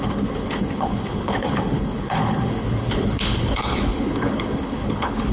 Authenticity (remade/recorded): remade